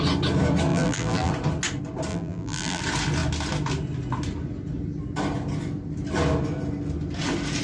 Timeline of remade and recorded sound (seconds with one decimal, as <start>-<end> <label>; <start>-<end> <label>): 0.0-0.7 recorded; 0.7-1.3 remade; 1.3-2.1 recorded; 2.1-2.8 remade; 2.8-7.6 recorded